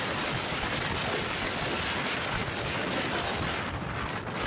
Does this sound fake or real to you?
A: real